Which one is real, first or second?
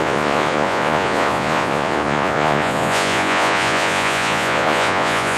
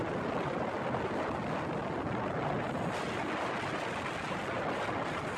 second